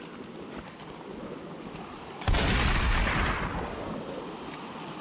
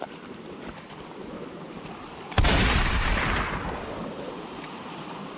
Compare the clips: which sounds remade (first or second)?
second